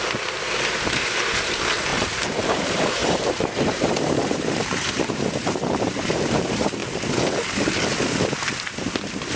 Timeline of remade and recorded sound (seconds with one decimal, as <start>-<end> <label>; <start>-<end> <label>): 0.0-6.8 remade; 6.8-9.4 recorded